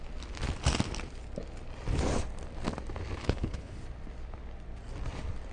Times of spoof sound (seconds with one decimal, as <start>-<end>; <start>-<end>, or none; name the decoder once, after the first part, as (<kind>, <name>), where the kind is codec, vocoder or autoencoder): 3.2-3.8 (codec, HILCodec)